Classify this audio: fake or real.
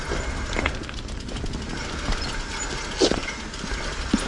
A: real